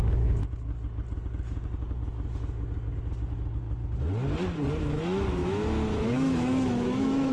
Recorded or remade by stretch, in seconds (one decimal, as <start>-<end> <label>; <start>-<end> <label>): 0.0-0.4 remade; 0.4-4.8 recorded; 4.8-7.3 remade